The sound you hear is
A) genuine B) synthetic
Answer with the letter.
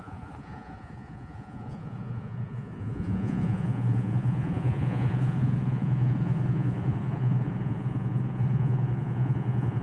B